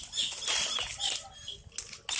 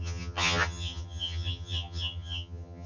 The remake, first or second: second